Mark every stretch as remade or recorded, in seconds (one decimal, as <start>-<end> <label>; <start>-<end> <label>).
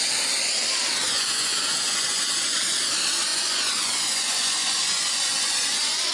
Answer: 0.0-1.0 recorded; 1.0-2.6 remade; 2.6-3.3 recorded; 3.3-6.1 remade